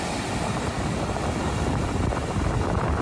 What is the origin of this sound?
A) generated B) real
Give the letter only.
B